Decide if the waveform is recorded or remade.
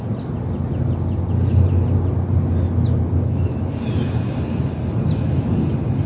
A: recorded